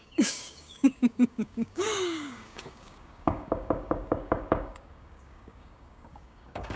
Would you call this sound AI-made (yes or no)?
yes